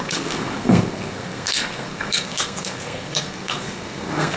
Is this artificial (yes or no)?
yes